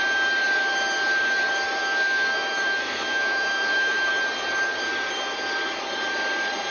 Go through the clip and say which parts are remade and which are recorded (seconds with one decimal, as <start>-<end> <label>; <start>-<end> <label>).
0.0-1.8 recorded; 1.8-4.1 remade; 4.1-6.7 recorded